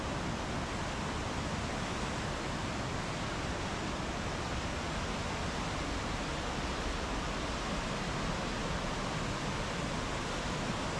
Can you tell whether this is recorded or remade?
recorded